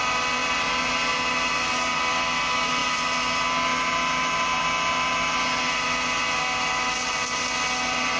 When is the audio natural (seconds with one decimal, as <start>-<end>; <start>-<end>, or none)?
0.0-8.2